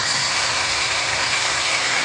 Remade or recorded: remade